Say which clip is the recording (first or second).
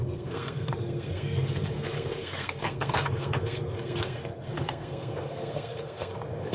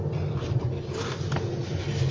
second